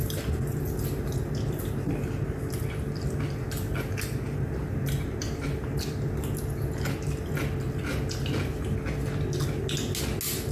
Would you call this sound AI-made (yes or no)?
no